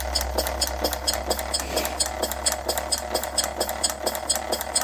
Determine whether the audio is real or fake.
real